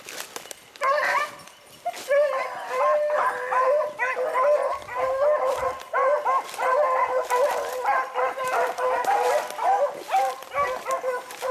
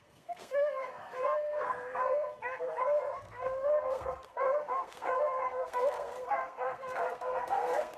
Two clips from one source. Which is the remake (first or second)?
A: second